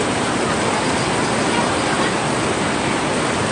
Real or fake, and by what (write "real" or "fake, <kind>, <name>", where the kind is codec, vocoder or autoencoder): real